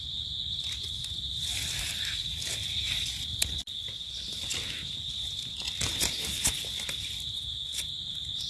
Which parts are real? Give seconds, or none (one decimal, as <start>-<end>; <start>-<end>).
0.0-8.5